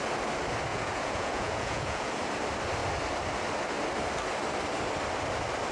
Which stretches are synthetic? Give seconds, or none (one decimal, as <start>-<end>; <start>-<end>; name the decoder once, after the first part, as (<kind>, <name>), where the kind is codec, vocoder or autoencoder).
0.7-2.1 (vocoder, Vocos)